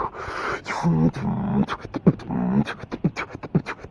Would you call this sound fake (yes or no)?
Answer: no